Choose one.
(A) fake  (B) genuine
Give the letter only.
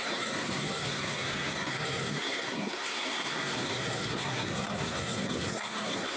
A